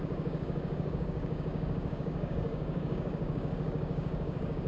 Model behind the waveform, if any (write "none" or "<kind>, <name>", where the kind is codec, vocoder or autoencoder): codec, DAC